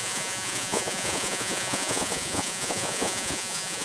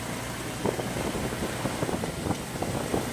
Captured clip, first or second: second